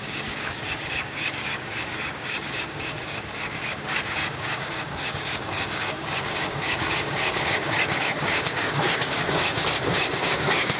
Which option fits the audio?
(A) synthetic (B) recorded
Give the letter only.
A